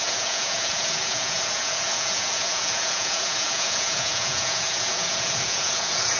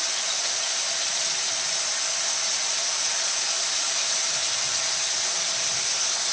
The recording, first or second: second